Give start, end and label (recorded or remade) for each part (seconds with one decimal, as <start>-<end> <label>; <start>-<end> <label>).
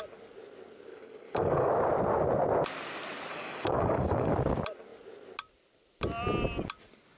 0.0-0.9 recorded; 0.9-1.7 remade; 1.7-3.3 recorded; 3.3-4.3 remade; 4.3-7.2 recorded